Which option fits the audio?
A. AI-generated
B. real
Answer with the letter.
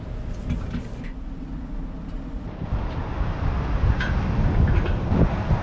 B